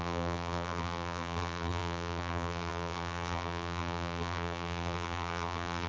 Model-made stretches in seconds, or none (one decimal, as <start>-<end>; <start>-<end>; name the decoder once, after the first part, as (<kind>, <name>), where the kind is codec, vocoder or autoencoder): 0.0-5.9 (vocoder, BigVGAN v2)